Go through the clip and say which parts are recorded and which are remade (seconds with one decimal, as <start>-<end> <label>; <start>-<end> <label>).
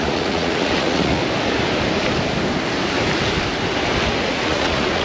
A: 0.0-1.2 remade; 1.2-4.2 recorded; 4.2-5.0 remade